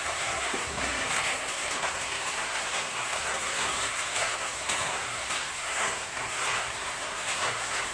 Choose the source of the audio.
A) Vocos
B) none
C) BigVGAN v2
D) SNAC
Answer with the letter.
D